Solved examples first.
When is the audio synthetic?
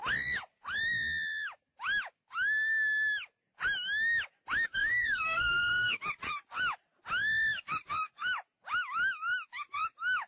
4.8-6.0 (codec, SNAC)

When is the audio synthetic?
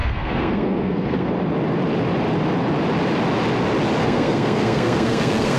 0.0-1.3 (codec, SNAC); 4.0-5.6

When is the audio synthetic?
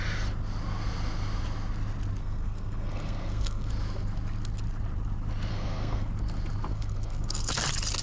2.2-3.7 (codec, SNAC); 5.5-6.1; 6.7-7.5